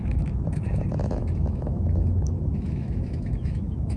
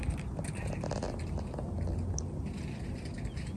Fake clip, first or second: first